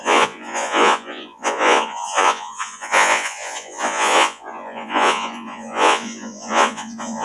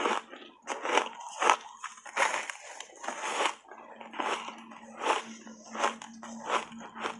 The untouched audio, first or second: second